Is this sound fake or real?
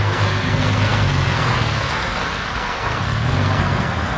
fake